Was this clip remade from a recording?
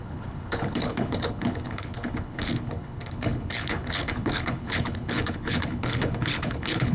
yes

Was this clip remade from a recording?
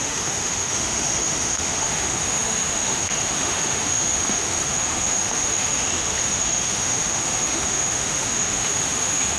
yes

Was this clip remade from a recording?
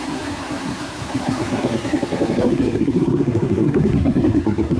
yes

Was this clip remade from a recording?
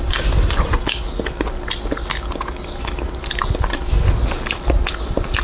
no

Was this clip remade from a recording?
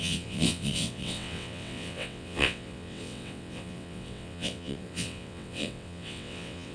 yes